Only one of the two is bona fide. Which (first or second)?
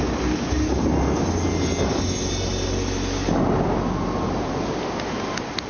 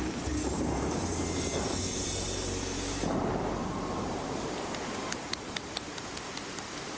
first